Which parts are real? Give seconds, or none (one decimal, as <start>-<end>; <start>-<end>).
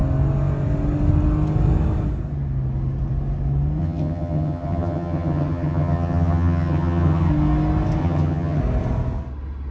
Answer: 0.0-3.8; 7.3-8.0; 8.6-9.7